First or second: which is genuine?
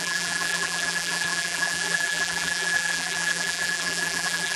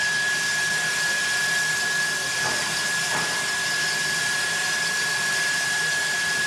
second